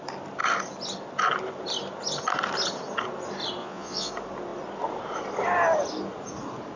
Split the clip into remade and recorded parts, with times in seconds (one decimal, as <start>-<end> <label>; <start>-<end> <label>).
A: 0.0-3.6 recorded; 3.6-4.1 remade; 4.1-6.8 recorded